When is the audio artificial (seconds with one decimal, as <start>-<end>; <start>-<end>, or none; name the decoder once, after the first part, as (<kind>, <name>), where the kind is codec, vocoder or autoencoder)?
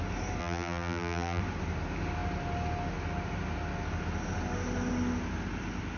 0.4-1.4 (vocoder, BigVGAN v2)